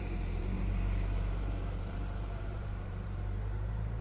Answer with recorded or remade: remade